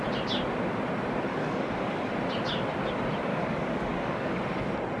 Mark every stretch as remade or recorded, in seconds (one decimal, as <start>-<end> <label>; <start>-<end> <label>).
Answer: 0.0-1.3 recorded; 1.3-2.1 remade; 2.1-3.3 recorded; 3.3-4.4 remade; 4.4-5.0 recorded